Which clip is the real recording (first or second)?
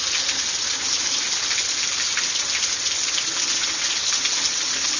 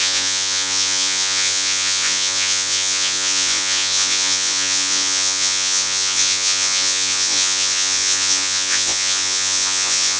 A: first